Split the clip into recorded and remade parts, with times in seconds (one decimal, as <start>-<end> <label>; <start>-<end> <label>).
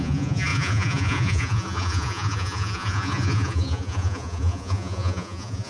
0.0-5.7 remade